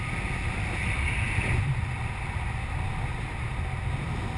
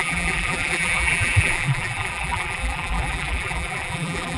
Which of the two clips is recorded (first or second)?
first